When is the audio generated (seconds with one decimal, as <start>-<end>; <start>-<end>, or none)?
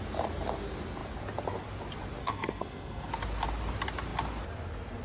2.2-3.1